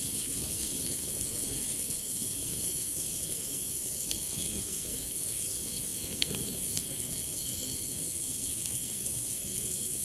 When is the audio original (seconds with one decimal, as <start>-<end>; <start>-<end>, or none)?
none